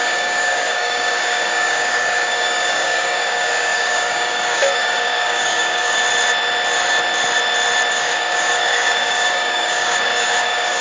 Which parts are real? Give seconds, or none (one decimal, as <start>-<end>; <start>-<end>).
6.0-7.9